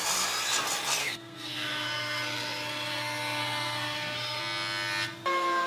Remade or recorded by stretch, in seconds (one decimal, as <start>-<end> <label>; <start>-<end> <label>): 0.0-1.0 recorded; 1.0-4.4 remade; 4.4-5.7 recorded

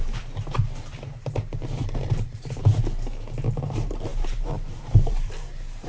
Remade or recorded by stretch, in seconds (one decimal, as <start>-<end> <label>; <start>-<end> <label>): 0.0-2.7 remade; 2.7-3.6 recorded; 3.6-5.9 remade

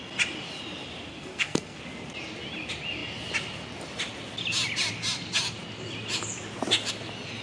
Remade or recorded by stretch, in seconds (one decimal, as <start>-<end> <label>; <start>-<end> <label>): 0.0-1.1 recorded; 1.1-1.8 remade; 1.8-7.4 recorded

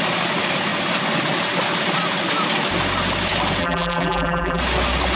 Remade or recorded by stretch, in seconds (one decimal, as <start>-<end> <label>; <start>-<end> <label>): 0.0-3.6 recorded; 3.6-4.6 remade; 4.6-5.2 recorded

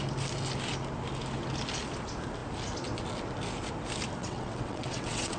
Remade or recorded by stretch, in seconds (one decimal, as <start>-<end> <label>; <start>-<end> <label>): 0.0-4.2 recorded; 4.2-5.4 remade

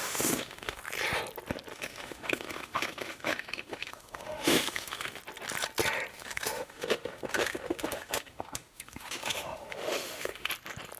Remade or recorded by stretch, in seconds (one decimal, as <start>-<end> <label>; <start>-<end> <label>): 0.0-0.8 remade; 0.8-1.7 recorded; 1.7-5.2 remade; 5.2-6.1 recorded; 6.1-10.5 remade; 10.5-11.0 recorded